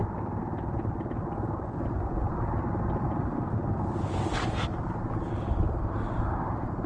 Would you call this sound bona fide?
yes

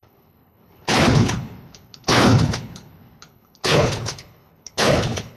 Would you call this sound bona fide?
no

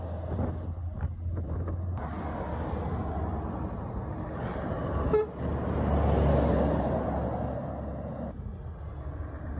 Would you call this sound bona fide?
yes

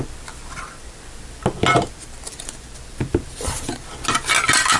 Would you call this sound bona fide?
yes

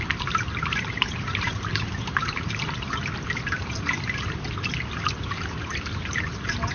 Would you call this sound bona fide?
no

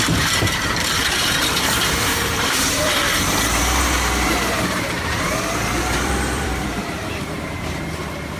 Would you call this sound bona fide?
no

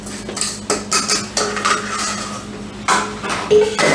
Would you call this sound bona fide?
yes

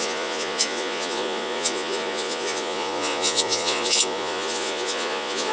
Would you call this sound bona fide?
no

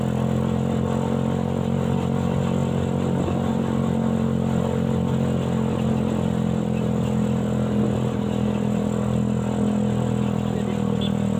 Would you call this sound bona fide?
yes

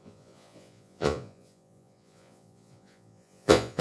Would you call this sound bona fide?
no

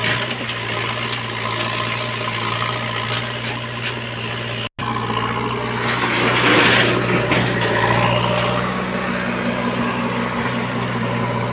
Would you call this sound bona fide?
yes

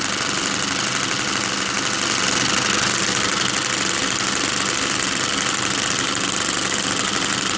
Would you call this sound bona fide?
yes